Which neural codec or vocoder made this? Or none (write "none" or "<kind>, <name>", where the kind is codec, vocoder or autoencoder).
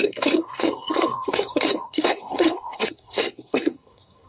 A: codec, SNAC